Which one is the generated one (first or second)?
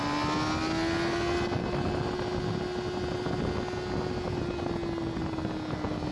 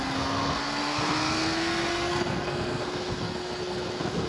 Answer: second